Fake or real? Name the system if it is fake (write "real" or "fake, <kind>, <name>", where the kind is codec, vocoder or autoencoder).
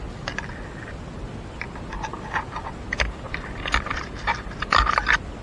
real